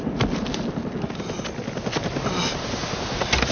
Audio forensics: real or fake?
real